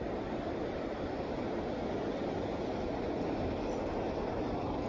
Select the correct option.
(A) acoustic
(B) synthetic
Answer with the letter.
A